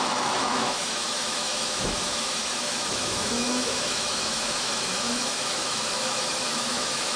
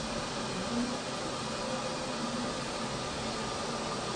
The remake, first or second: first